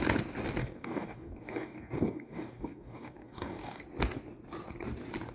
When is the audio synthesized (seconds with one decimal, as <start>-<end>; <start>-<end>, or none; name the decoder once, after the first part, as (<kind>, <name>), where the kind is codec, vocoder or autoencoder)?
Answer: 0.6-3.8 (codec, DAC)